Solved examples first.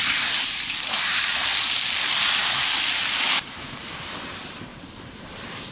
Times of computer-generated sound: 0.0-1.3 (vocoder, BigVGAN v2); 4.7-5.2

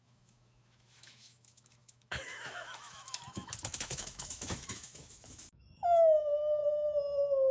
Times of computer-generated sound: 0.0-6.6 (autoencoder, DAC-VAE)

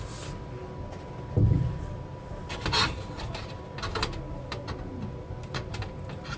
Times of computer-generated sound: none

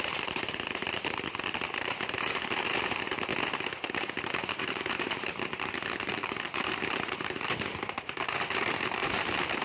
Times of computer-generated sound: 0.0-3.3 (vocoder, BigVGAN v2); 4.6-9.6